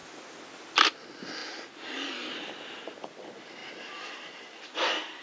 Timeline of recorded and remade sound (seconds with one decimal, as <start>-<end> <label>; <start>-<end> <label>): 0.0-5.2 recorded